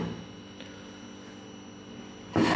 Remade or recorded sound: recorded